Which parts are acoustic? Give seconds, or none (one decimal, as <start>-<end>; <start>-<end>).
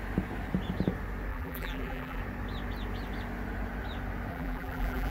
0.0-1.3; 2.2-4.3